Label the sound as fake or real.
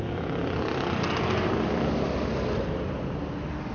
real